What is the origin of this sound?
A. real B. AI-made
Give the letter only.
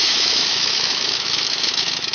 B